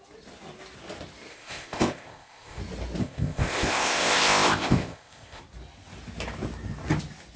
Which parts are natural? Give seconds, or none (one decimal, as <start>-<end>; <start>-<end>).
0.0-1.3; 2.6-3.0; 5.4-7.4